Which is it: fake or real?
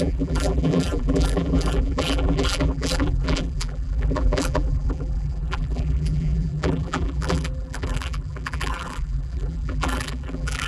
fake